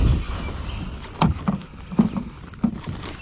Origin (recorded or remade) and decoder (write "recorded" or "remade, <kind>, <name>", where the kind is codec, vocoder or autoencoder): recorded